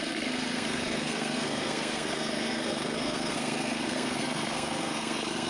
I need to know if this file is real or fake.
fake